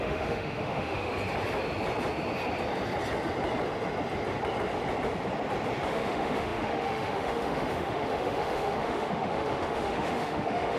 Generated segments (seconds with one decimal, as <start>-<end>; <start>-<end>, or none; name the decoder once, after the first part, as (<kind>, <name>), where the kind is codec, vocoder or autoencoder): 0.0-1.1 (autoencoder, DAC-VAE); 5.9-10.8